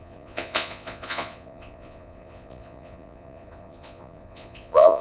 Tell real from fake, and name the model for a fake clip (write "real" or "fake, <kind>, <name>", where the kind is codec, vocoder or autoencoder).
fake, vocoder, Vocos